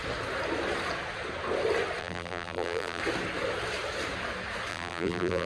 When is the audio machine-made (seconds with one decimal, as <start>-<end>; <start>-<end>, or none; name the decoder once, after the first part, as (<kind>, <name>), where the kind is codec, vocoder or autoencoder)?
2.0-3.0 (vocoder, BigVGAN v2); 4.7-5.5

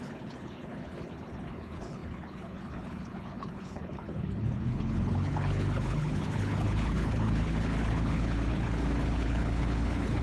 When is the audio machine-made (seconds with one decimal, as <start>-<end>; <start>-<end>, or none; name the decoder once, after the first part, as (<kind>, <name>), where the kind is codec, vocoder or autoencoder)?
0.0-10.2 (codec, HILCodec)

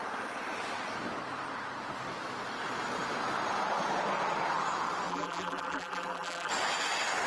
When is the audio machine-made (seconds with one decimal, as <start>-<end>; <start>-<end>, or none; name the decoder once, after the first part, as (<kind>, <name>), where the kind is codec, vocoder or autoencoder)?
5.1-6.5 (vocoder, BigVGAN v2)

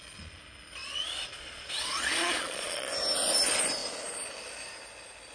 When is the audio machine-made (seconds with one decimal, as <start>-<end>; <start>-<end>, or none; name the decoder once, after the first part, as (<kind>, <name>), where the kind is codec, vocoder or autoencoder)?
0.8-2.9 (vocoder, Vocos)

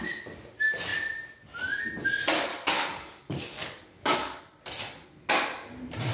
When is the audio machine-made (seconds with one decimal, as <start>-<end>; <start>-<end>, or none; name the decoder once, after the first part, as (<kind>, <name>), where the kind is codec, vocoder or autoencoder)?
2.5-4.4 (codec, DAC)

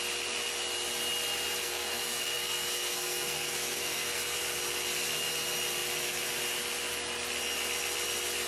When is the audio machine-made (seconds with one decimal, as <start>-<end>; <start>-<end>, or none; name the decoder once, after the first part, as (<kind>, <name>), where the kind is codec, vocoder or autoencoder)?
1.6-4.4 (codec, SNAC)

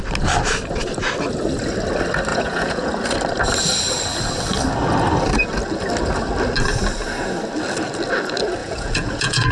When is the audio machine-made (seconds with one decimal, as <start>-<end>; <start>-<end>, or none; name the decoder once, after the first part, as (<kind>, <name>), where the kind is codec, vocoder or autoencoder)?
2.3-2.9 (vocoder, Vocos); 8.6-9.5